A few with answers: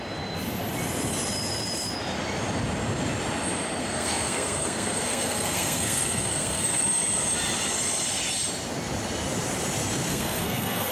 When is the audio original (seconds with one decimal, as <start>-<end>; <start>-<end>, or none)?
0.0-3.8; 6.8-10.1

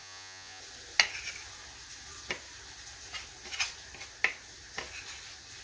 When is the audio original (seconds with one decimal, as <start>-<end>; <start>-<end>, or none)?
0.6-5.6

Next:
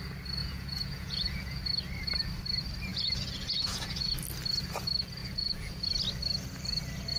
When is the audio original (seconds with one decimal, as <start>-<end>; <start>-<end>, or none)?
0.0-0.4; 1.6-2.9; 4.1-5.2; 5.7-7.2

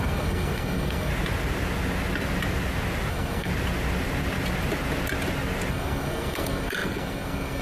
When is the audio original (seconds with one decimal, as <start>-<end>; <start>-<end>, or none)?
1.1-3.1; 3.5-5.7

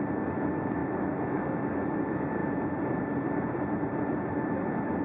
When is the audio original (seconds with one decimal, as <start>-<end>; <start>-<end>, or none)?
0.0-0.8; 1.4-2.4; 4.0-5.0